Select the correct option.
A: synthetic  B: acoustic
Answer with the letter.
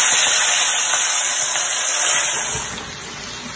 B